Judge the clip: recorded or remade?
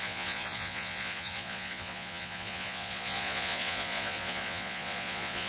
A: remade